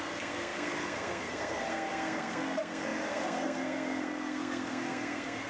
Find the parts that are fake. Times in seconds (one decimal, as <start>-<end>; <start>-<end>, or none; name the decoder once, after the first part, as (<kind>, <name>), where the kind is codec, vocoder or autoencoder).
0.0-5.5 (codec, SNAC)